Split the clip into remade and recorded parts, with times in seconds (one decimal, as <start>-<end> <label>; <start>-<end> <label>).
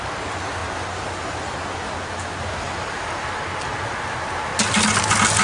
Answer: 0.0-0.6 remade; 0.6-3.8 recorded; 3.8-4.5 remade; 4.5-5.4 recorded